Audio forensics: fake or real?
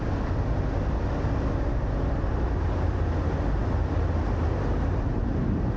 real